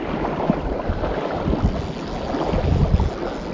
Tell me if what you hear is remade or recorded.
recorded